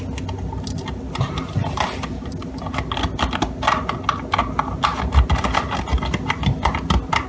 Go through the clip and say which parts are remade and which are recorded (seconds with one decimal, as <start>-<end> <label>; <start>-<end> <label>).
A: 0.0-7.3 recorded